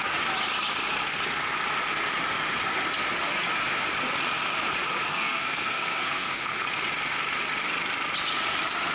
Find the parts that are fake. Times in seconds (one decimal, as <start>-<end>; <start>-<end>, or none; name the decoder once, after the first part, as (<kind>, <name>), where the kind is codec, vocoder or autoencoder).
5.1-6.4 (codec, SNAC)